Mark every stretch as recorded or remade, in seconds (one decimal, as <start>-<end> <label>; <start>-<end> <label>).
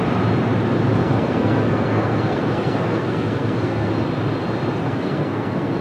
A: 0.0-1.0 recorded; 1.0-3.9 remade; 3.9-4.8 recorded; 4.8-5.8 remade